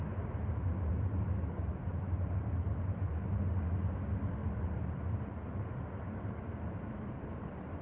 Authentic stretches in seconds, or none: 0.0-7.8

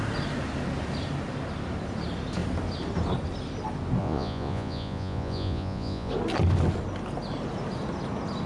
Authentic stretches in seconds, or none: 0.0-4.0; 6.1-8.5